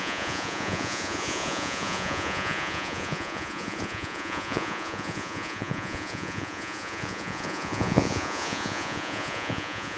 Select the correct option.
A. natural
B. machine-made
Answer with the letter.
B